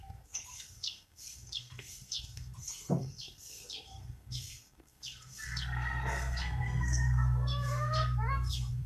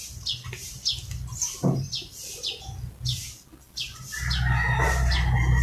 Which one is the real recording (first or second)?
second